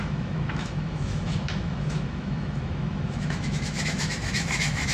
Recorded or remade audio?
remade